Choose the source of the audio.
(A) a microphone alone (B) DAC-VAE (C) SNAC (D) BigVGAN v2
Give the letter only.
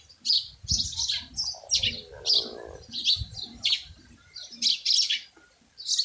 A